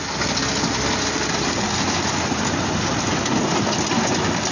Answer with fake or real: real